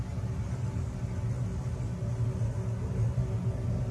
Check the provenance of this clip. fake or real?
real